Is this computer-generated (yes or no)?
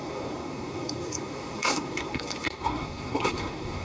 yes